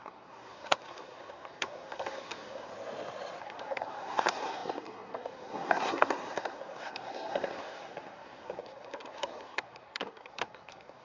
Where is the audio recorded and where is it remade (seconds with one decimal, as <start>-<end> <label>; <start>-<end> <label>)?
0.0-2.7 remade; 2.7-3.4 recorded; 3.4-11.0 remade